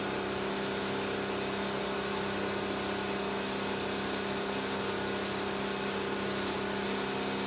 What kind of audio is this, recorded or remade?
recorded